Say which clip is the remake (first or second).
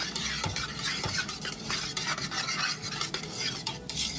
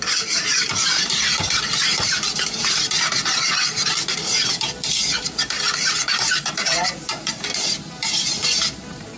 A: second